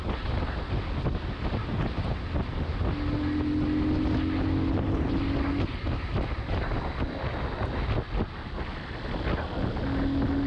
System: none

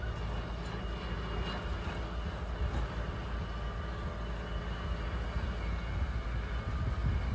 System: none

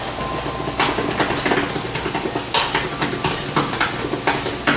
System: none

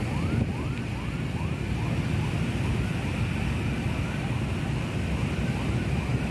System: none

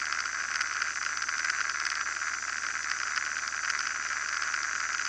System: none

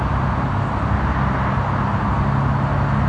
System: none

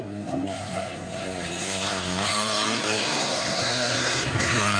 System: codec, SNAC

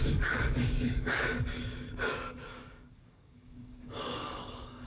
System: codec, DAC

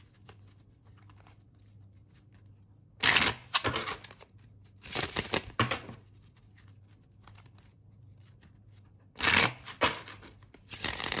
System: none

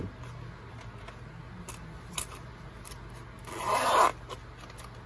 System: none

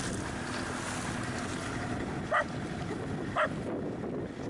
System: none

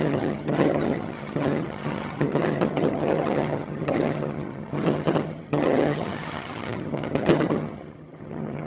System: vocoder, HiFi-GAN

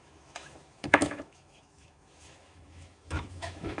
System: autoencoder, DAC-VAE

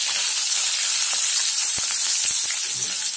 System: none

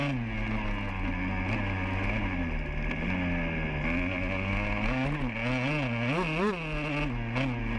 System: none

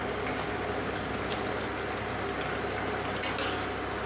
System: none